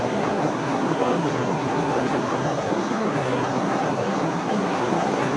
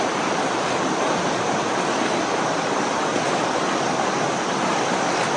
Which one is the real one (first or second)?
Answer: second